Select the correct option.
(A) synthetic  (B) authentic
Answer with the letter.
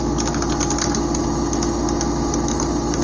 B